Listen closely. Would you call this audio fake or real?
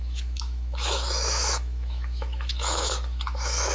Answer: fake